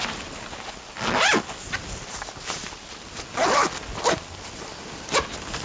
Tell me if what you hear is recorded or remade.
recorded